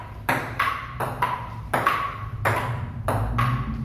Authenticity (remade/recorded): recorded